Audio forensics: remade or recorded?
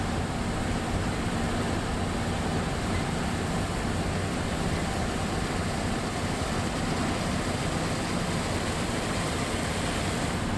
recorded